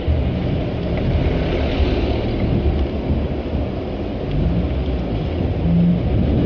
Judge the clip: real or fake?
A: real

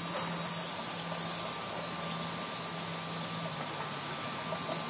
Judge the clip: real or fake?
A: real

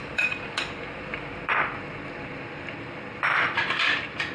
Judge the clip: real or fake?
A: fake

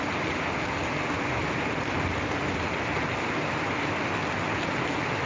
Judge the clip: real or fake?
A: real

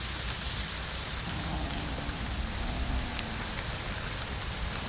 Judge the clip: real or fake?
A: real